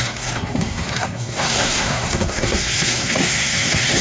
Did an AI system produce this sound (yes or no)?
yes